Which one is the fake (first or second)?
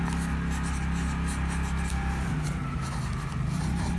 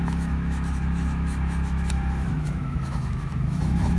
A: second